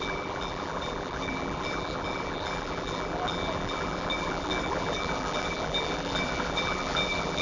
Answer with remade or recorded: remade